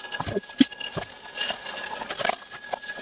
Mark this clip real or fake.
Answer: real